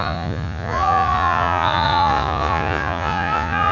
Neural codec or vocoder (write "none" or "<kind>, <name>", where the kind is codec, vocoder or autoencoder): vocoder, Vocos